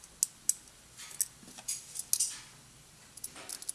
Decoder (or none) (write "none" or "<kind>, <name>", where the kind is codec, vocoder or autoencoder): none